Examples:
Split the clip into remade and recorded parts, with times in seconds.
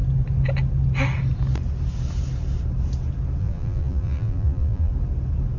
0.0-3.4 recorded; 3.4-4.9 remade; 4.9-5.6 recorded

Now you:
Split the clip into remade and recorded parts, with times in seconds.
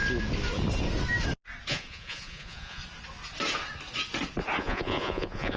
0.0-1.7 recorded; 1.7-2.8 remade; 2.8-4.6 recorded; 4.6-5.6 remade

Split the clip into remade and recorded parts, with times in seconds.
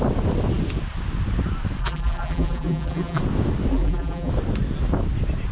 0.0-1.8 recorded; 1.8-3.2 remade; 3.2-3.7 recorded; 3.7-4.3 remade; 4.3-5.5 recorded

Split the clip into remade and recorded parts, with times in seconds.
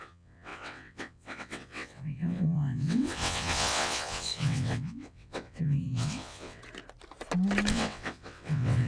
0.0-6.6 remade; 6.6-7.7 recorded; 7.7-8.9 remade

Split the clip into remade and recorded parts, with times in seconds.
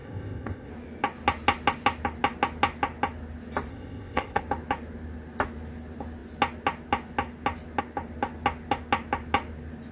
0.0-0.7 remade; 0.7-3.7 recorded; 3.7-4.4 remade; 4.4-9.9 recorded